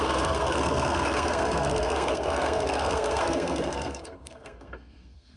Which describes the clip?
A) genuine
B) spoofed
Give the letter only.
B